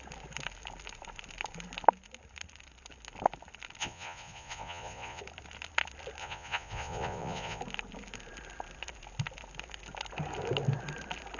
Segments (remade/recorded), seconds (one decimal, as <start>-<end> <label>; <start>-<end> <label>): 0.0-3.8 recorded; 3.8-5.2 remade; 5.2-6.2 recorded; 6.2-7.6 remade; 7.6-11.4 recorded